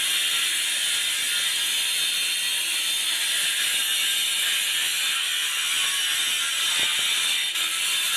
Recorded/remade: recorded